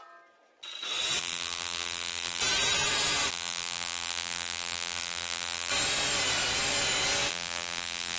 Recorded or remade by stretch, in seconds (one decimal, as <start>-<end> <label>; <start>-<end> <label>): 0.0-1.2 recorded; 1.2-2.4 remade; 2.4-3.3 recorded; 3.3-5.7 remade; 5.7-7.3 recorded; 7.3-8.2 remade